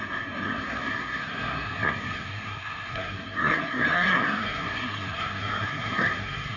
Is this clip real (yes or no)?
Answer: no